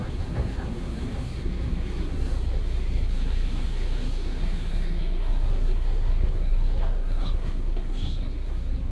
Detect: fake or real fake